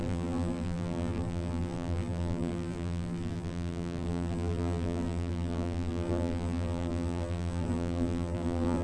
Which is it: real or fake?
fake